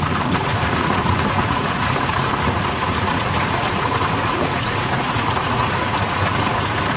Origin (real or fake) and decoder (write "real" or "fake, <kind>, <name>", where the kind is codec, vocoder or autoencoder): fake, vocoder, Vocos